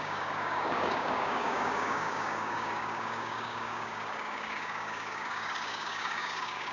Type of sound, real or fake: fake